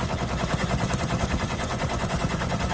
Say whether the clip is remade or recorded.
remade